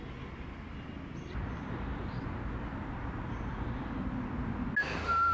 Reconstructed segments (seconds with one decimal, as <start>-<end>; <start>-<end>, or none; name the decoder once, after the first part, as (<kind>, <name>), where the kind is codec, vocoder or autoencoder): none